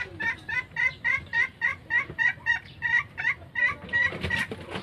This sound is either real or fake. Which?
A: fake